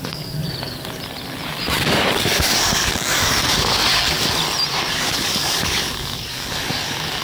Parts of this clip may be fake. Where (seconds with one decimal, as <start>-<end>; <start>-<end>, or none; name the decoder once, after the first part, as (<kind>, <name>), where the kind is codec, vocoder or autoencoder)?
0.0-0.4 (codec, DAC); 1.8-3.8; 4.9-7.2

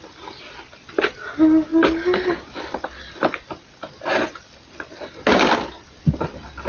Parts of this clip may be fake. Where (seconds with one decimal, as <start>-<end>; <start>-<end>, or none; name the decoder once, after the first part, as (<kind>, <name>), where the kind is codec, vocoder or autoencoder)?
none

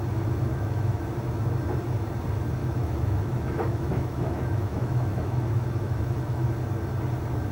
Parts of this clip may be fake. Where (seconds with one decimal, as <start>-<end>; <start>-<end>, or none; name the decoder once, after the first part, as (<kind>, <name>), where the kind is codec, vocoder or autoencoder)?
0.5-1.0 (autoencoder, DAC-VAE); 2.6-6.5

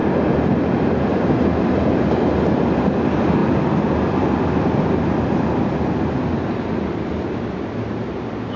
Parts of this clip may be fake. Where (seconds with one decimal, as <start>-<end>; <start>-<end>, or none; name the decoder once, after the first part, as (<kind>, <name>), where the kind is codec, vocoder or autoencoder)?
none

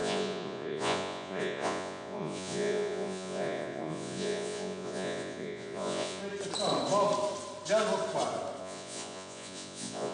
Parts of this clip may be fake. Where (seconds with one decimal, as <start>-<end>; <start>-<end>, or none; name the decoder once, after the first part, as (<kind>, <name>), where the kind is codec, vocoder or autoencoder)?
0.0-6.2 (vocoder, Vocos); 8.6-10.1